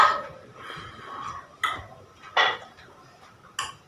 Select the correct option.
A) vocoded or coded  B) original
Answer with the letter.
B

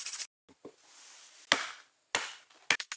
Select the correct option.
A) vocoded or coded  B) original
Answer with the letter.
B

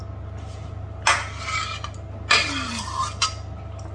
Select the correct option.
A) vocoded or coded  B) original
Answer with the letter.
B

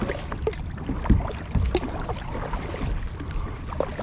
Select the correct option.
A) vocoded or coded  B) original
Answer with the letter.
B